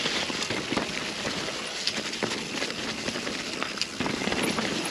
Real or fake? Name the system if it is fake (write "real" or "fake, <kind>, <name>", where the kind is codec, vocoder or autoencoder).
real